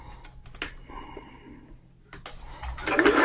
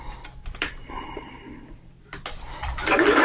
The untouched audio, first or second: first